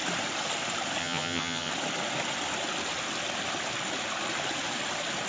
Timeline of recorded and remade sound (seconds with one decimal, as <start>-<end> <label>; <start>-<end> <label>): 0.0-1.0 recorded; 1.0-1.7 remade; 1.7-5.3 recorded